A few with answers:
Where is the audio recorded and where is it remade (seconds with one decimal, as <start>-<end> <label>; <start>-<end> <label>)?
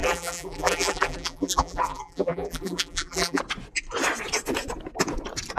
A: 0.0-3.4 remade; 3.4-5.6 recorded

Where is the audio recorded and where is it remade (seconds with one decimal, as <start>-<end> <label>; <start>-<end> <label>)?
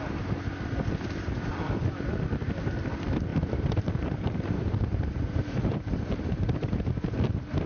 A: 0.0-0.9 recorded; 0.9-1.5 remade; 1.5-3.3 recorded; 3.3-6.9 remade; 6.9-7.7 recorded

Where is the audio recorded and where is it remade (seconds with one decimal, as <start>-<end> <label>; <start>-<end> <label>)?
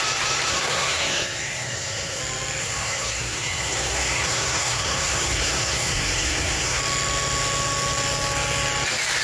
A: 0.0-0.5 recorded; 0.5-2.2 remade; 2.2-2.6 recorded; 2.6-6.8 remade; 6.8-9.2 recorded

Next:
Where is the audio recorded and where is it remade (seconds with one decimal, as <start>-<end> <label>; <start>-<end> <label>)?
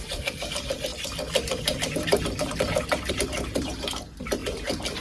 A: 0.0-5.0 recorded